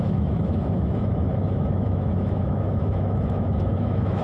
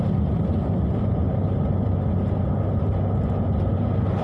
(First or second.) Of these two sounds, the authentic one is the second